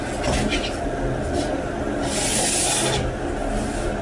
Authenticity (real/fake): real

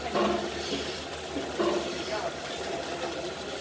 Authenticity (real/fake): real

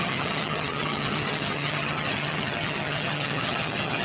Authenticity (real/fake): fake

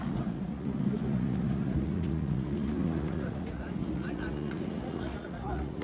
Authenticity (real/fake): fake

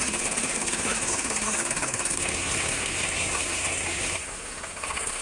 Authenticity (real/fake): fake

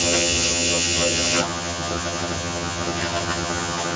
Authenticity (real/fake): fake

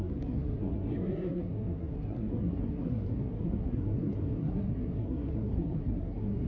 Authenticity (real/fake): fake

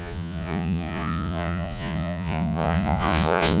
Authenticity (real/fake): fake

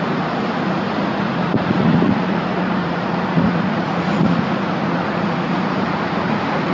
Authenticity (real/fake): fake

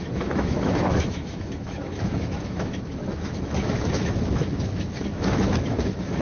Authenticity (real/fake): fake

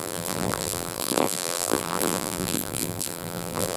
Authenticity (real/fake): fake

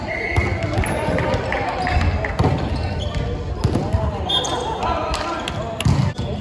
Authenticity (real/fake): real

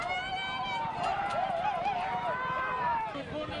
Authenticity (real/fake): real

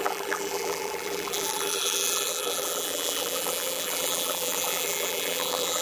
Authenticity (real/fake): fake